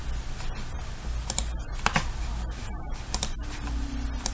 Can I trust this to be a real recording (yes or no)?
yes